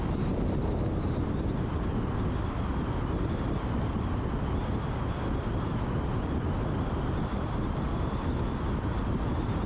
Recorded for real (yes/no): yes